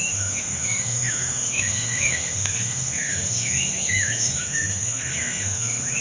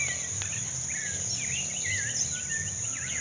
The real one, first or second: second